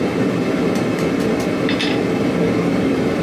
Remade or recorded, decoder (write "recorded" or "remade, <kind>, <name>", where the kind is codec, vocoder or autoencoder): remade, vocoder, BigVGAN v2